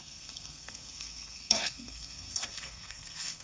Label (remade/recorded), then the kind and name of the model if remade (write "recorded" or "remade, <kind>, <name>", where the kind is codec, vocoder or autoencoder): remade, codec, SNAC